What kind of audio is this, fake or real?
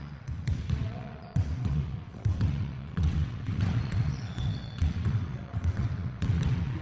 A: fake